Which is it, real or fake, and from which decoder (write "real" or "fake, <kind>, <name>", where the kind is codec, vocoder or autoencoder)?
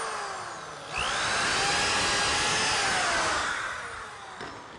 real